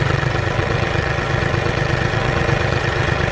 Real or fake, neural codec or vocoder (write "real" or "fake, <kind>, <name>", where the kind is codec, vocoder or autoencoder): fake, vocoder, WaveNeXt